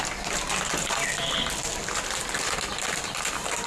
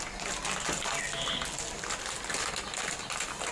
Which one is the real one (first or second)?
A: second